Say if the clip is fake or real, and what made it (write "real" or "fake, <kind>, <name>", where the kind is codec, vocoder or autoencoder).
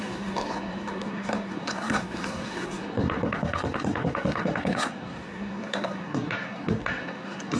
fake, codec, SNAC